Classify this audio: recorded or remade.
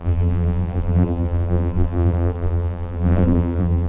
remade